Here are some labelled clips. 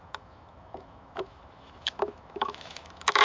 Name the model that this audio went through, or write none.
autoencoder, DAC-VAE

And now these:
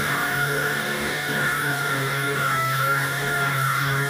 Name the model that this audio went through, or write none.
codec, DAC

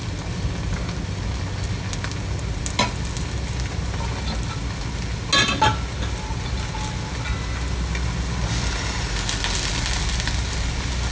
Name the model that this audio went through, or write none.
none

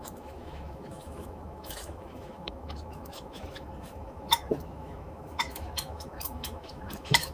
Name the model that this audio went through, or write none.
autoencoder, DAC-VAE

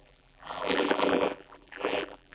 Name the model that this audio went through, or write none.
vocoder, BigVGAN v2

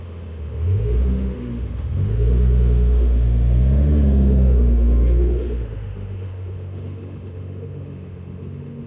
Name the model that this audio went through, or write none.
autoencoder, DAC-VAE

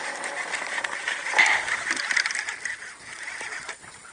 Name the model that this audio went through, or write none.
none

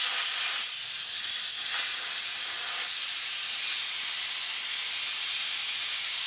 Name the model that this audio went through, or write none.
none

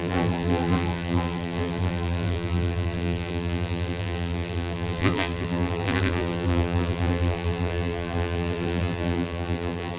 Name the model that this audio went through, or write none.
vocoder, BigVGAN v2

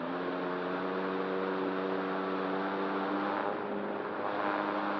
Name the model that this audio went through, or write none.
none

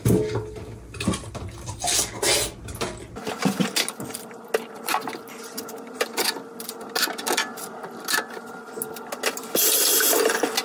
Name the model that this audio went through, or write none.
none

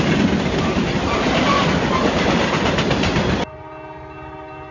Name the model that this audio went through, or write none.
none